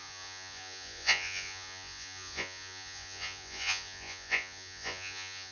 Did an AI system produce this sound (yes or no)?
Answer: yes